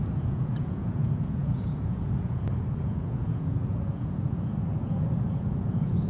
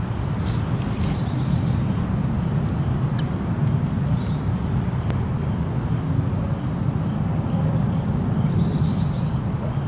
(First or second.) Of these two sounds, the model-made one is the first